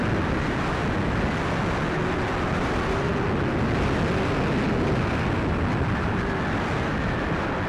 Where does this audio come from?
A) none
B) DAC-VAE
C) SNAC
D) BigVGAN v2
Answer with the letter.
A